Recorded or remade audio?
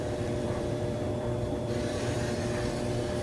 remade